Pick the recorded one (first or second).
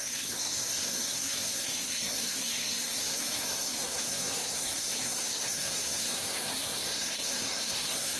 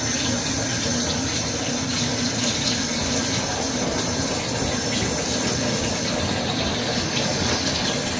second